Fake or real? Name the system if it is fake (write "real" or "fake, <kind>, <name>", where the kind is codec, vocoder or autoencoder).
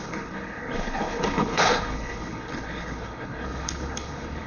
fake, codec, HILCodec